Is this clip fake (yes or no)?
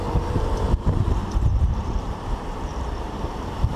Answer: yes